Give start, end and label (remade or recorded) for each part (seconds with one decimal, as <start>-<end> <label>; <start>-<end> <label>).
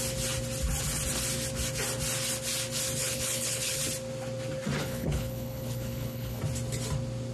0.0-3.0 recorded; 3.0-3.8 remade; 3.8-4.8 recorded; 4.8-6.4 remade; 6.4-7.3 recorded